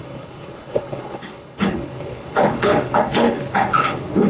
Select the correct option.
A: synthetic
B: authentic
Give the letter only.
A